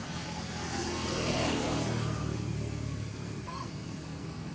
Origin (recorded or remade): remade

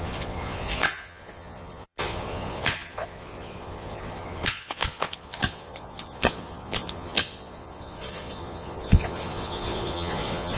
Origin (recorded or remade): remade